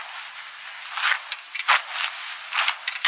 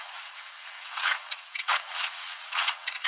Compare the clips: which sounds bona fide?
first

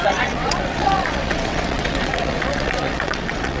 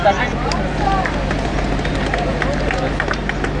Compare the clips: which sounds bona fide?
second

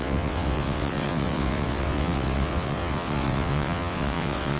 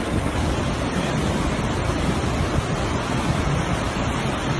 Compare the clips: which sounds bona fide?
second